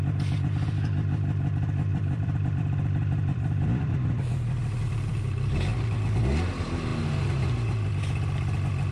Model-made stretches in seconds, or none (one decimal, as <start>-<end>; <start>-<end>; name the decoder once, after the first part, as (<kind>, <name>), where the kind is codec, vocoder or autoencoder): 1.9-5.2 (vocoder, BigVGAN v2); 5.7-6.2